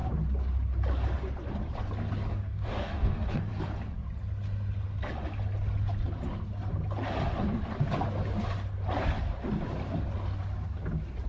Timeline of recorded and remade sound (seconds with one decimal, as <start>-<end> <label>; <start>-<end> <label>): 0.0-2.3 recorded; 2.3-3.5 remade; 3.5-11.3 recorded